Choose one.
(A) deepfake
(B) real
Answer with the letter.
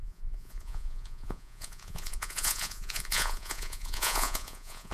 A